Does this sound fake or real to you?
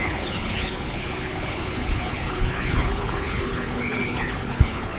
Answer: fake